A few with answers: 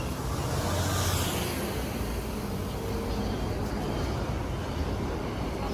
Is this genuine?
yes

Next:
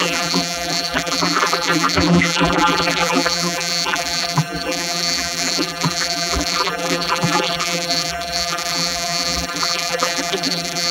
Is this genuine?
no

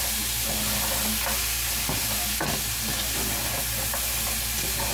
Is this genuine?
yes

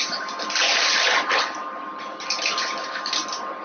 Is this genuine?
no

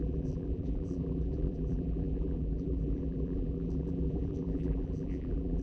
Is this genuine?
no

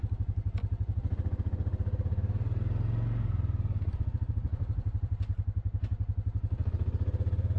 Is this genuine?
yes